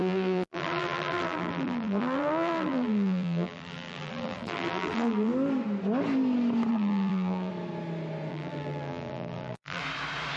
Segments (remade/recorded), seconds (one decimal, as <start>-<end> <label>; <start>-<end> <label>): 0.0-5.3 remade; 5.3-6.7 recorded; 6.7-7.5 remade; 7.5-8.3 recorded; 8.3-9.8 remade; 9.8-10.4 recorded